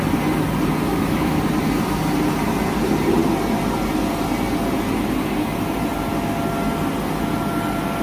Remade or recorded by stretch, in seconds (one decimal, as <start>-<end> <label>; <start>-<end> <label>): 0.0-0.9 recorded; 0.9-1.4 remade; 1.4-8.0 recorded